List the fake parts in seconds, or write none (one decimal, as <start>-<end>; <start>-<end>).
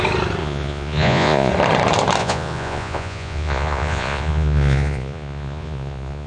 0.4-1.5; 2.2-6.3